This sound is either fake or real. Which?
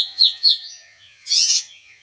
fake